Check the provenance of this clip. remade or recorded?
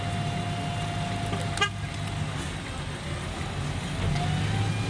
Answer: recorded